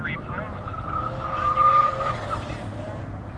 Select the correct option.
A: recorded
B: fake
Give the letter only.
A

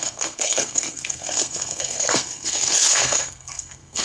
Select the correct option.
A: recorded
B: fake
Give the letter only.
B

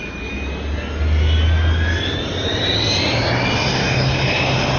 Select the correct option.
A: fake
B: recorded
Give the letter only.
B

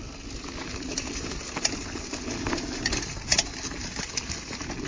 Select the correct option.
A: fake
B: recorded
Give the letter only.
B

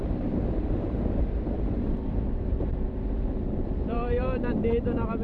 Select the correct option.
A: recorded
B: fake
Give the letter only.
B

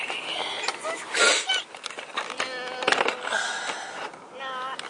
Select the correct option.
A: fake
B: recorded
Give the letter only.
B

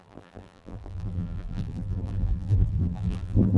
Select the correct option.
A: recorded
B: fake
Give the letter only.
B